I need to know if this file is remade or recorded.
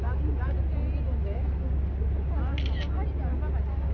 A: recorded